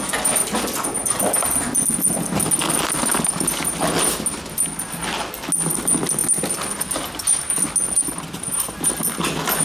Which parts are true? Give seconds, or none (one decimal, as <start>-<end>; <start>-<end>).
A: 0.0-9.6